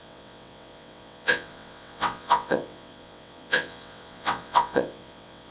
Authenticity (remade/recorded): remade